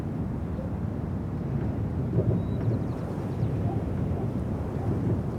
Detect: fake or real fake